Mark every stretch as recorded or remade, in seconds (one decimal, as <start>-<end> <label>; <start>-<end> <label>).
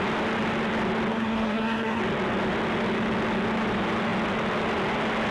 0.0-1.1 recorded; 1.1-2.0 remade; 2.0-5.3 recorded